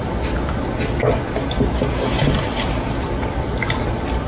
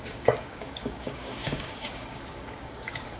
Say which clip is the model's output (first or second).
second